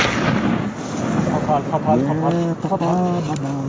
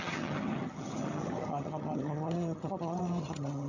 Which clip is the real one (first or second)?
first